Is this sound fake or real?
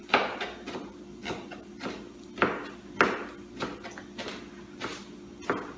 real